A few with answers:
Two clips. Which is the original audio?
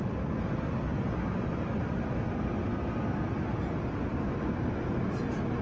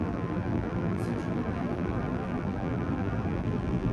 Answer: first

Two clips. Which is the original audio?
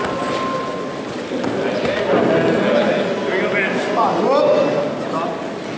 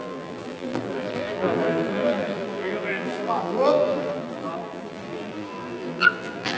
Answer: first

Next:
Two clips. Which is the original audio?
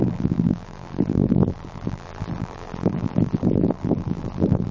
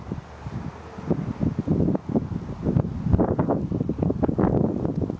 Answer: second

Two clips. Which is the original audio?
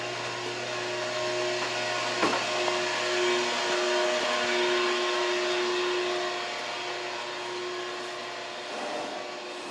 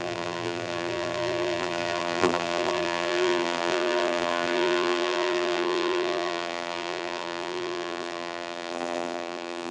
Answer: first